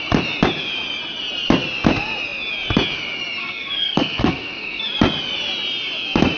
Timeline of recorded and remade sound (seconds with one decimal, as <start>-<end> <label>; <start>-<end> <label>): 0.0-3.4 recorded; 3.4-4.8 remade; 4.8-6.4 recorded